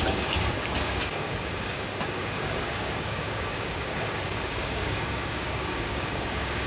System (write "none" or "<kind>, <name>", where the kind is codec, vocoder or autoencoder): codec, DAC